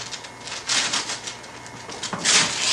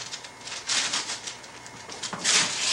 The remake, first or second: second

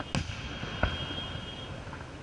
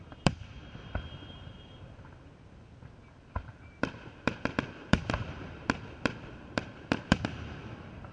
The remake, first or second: second